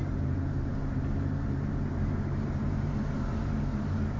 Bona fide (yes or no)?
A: no